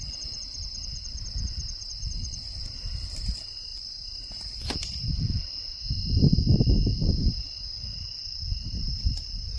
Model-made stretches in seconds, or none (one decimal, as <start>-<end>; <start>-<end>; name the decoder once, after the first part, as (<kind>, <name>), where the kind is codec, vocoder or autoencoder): 2.2-2.8 (vocoder, Vocos)